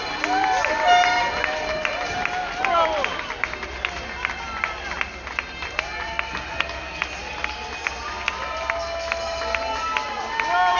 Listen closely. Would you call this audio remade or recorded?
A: recorded